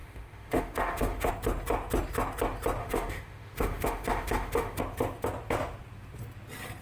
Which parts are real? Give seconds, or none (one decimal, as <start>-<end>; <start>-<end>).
1.3-2.8; 4.8-6.8